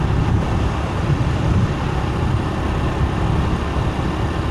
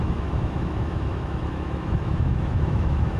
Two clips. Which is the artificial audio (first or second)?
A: second